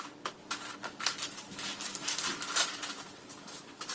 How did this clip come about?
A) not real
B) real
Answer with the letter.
B